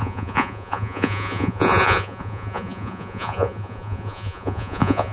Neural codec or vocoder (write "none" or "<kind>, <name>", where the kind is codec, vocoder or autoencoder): vocoder, Vocos